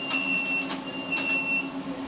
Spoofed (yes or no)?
no